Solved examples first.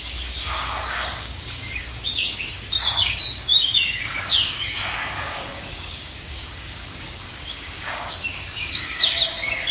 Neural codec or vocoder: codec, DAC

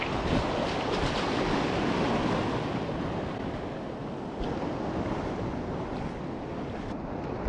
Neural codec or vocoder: none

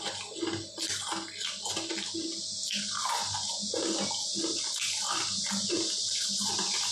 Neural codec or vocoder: none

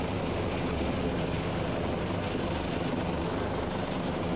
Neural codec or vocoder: none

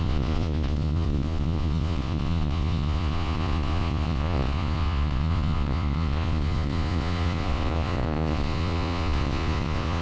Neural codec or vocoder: vocoder, Vocos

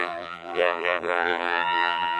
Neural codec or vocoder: vocoder, BigVGAN v2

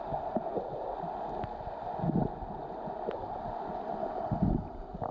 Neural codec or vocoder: none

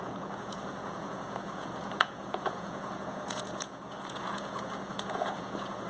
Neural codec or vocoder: vocoder, Vocos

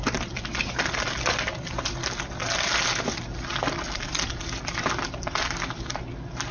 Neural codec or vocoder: none